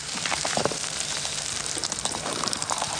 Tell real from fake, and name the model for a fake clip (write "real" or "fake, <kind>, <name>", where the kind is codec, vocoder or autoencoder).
fake, vocoder, BigVGAN v2